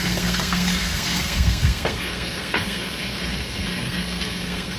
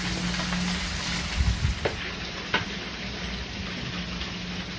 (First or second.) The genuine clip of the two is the second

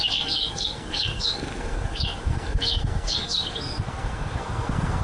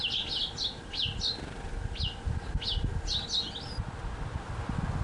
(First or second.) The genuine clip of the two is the second